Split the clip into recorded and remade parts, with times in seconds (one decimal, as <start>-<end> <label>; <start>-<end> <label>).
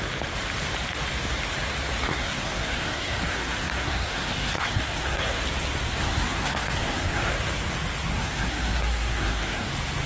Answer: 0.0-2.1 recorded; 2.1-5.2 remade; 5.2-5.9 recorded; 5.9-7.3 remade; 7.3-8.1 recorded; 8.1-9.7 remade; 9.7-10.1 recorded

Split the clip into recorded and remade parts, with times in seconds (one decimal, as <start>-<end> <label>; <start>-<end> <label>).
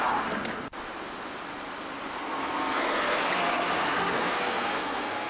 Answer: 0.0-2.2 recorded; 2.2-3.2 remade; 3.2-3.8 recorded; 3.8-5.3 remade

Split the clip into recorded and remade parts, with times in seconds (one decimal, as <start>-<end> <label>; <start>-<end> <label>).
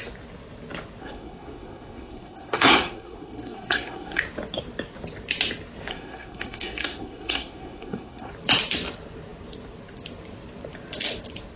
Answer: 0.0-1.0 recorded; 1.0-4.2 remade; 4.2-5.9 recorded; 5.9-8.3 remade; 8.3-11.6 recorded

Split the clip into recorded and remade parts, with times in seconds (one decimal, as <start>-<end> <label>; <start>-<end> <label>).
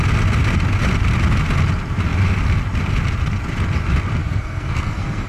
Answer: 0.0-4.2 recorded; 4.2-5.3 remade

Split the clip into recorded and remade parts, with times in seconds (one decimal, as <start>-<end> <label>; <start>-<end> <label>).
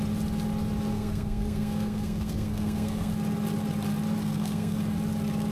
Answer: 0.0-0.9 recorded; 0.9-3.1 remade; 3.1-4.2 recorded; 4.2-4.8 remade; 4.8-5.5 recorded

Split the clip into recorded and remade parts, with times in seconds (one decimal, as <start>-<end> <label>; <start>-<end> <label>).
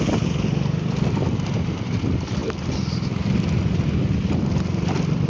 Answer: 0.0-5.3 recorded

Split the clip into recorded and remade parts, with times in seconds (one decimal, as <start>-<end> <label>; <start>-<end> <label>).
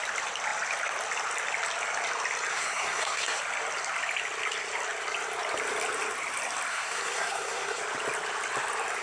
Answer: 0.0-2.5 recorded; 2.5-3.4 remade; 3.4-6.7 recorded; 6.7-7.8 remade; 7.8-9.0 recorded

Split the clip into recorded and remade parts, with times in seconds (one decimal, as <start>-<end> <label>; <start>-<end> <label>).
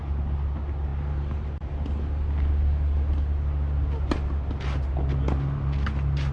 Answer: 0.0-6.3 recorded